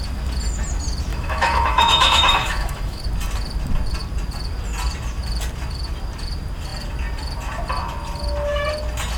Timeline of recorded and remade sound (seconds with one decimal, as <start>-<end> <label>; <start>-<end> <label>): 0.0-1.1 recorded; 1.1-3.0 remade; 3.0-9.2 recorded